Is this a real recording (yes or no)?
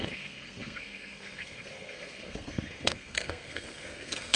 no